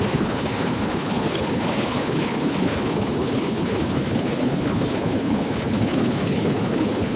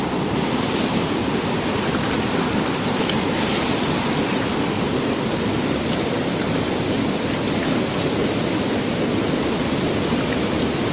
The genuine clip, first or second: second